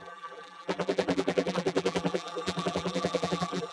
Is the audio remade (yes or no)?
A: yes